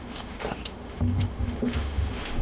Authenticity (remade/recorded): remade